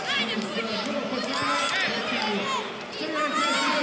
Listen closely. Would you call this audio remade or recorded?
recorded